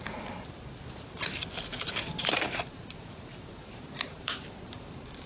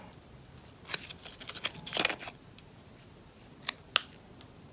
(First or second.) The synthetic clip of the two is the first